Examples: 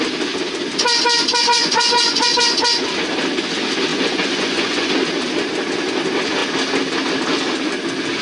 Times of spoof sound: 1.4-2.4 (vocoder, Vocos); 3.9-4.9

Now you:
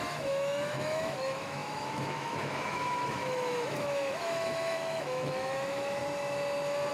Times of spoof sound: 0.0-6.0 (autoencoder, DAC-VAE)

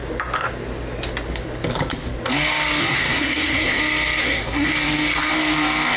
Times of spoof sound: 2.8-3.8 (codec, SNAC); 4.2-4.7

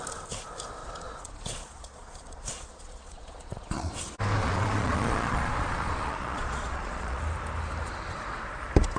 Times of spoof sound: 0.8-3.9 (vocoder, Vocos); 4.4-7.2

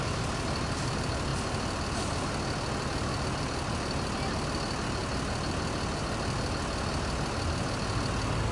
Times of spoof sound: none

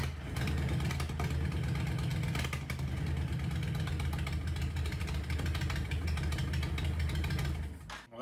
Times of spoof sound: none

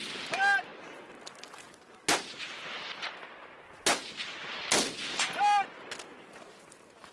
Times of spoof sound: none